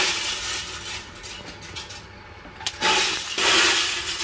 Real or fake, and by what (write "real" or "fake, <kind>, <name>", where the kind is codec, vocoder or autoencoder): real